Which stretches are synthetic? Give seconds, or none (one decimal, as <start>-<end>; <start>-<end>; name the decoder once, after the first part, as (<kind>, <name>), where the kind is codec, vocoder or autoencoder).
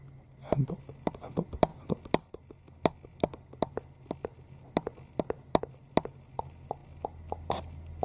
none